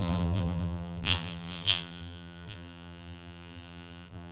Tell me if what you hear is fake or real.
fake